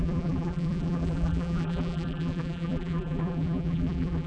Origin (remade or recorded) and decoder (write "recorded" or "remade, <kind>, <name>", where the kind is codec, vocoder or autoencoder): remade, vocoder, BigVGAN v2